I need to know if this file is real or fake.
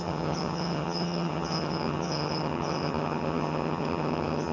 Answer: fake